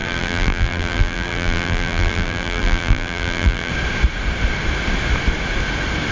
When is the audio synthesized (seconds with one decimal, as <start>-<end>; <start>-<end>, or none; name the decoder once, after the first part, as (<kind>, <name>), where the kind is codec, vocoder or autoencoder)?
0.0-3.7 (vocoder, BigVGAN v2)

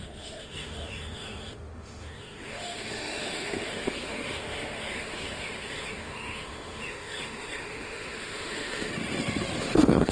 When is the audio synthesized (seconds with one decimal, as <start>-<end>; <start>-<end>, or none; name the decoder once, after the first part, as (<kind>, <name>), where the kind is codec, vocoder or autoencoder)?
0.0-8.9 (autoencoder, DAC-VAE); 9.6-10.1

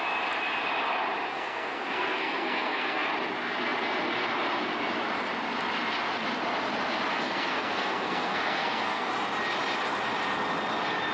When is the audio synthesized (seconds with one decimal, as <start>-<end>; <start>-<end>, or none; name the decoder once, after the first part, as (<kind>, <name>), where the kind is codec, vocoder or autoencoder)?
1.3-3.1 (codec, SNAC); 7.1-9.1

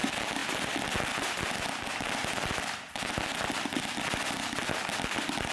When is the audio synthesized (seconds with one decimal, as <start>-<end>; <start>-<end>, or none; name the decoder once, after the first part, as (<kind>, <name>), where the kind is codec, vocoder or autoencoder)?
0.4-1.6 (vocoder, BigVGAN v2); 2.2-5.5

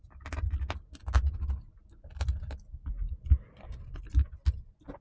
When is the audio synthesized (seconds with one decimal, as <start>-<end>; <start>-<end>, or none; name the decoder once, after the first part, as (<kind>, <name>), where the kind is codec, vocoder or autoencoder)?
none

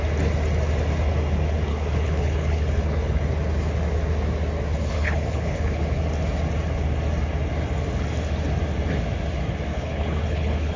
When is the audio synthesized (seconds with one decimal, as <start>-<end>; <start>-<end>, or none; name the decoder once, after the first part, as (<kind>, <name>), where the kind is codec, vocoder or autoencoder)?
1.7-3.2 (codec, HILCodec); 4.7-6.0; 9.7-10.8

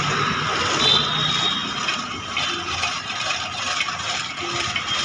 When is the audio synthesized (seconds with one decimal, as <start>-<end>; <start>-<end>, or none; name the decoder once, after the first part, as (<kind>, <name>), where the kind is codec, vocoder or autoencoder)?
1.6-3.6 (vocoder, BigVGAN v2)

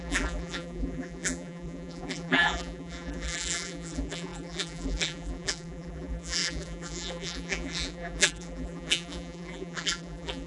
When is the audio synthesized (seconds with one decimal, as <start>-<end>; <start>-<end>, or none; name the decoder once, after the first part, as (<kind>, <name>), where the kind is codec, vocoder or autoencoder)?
0.0-10.5 (vocoder, BigVGAN v2)